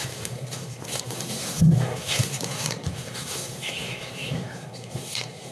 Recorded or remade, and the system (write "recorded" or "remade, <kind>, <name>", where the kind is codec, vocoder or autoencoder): remade, codec, SNAC